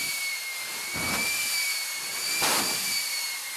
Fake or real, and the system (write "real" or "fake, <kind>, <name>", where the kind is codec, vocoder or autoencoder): fake, vocoder, BigVGAN v2